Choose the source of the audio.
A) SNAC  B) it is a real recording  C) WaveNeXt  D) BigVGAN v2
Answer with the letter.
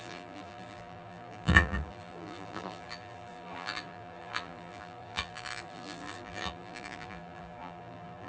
D